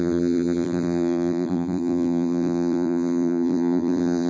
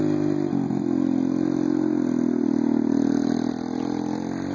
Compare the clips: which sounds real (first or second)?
second